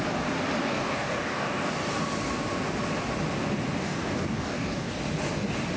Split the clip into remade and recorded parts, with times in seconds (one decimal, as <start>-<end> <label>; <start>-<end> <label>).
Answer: 0.0-0.6 recorded; 0.6-1.7 remade; 1.7-3.8 recorded; 3.8-4.9 remade; 4.9-5.8 recorded